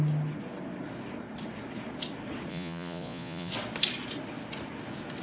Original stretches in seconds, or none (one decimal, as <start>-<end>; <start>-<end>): 0.0-2.5; 3.5-5.2